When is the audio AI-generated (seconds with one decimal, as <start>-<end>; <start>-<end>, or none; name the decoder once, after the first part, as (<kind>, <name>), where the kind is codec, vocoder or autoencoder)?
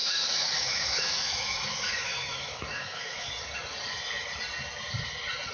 0.0-3.3 (autoencoder, DAC-VAE)